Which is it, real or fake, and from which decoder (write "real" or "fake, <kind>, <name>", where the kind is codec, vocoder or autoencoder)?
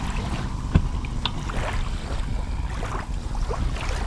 real